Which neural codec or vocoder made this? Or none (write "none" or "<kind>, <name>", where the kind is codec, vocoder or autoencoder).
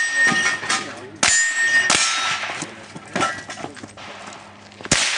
none